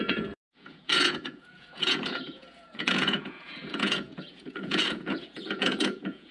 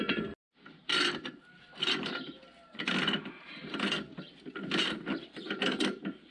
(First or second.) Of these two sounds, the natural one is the second